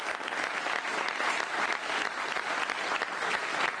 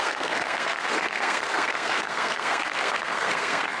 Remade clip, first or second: second